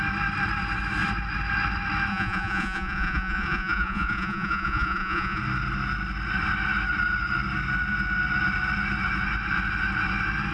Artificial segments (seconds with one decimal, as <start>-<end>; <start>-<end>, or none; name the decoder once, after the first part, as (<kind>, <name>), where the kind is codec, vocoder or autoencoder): 2.1-5.4 (vocoder, Vocos)